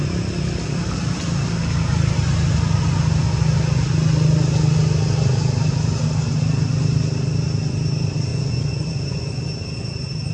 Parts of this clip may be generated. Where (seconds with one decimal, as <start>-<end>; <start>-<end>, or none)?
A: 8.3-9.4